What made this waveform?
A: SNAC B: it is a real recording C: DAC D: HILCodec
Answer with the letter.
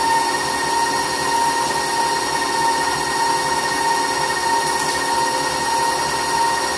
B